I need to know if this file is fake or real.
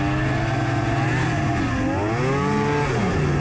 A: real